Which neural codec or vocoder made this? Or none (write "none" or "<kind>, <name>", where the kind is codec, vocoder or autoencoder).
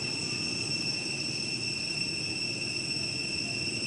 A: none